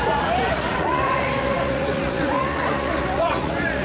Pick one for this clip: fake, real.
fake